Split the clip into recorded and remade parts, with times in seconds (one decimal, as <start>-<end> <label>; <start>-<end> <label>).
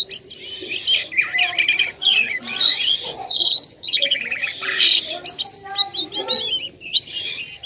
0.0-1.8 recorded; 1.8-5.0 remade; 5.0-7.7 recorded